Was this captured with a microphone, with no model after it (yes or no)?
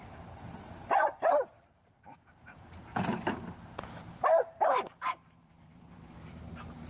no